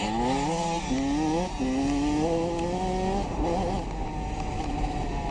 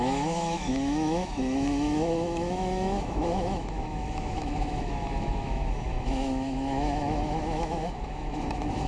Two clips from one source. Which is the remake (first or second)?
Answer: second